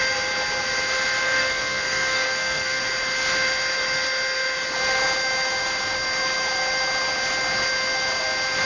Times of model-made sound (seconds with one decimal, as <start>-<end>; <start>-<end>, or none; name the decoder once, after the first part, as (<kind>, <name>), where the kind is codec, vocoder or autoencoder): 1.2-2.8 (codec, SNAC)